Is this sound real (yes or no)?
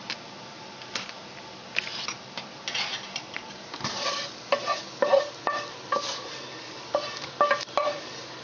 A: yes